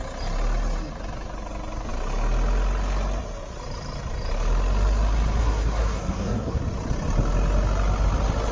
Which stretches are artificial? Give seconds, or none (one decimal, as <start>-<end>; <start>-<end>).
5.4-6.6